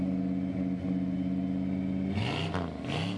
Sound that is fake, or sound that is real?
real